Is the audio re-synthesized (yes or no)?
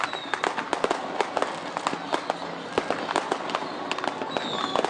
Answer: no